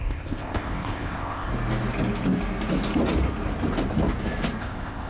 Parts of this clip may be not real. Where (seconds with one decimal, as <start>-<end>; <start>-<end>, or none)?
0.0-1.5; 4.6-5.1